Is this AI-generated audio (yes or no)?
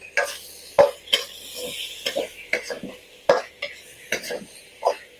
no